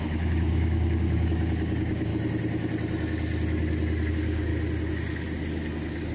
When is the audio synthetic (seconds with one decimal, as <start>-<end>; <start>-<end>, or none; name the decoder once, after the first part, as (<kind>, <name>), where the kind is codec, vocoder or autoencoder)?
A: 0.0-2.1 (codec, DAC); 4.1-4.5

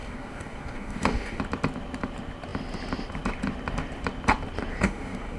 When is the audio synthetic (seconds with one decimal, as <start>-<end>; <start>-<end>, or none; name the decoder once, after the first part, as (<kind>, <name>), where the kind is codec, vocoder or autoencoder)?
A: 0.0-1.4 (codec, DAC); 4.7-5.4

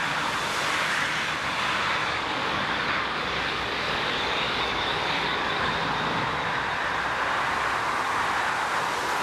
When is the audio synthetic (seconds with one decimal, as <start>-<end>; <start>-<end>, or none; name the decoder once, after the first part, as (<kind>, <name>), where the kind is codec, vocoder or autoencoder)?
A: 2.0-5.7 (codec, DAC)

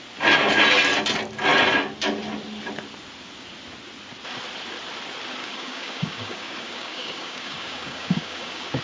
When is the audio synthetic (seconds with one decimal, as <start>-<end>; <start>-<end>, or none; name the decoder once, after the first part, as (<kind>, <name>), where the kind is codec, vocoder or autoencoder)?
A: 5.4-8.8 (codec, DAC)

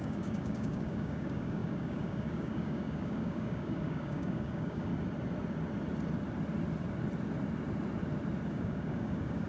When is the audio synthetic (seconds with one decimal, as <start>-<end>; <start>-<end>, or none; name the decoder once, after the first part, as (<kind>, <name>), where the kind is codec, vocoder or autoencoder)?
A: 0.0-4.9 (codec, DAC); 8.5-9.5